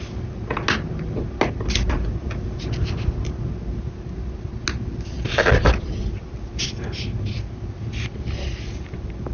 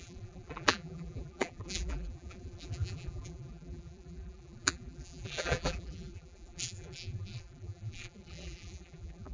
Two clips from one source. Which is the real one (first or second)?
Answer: first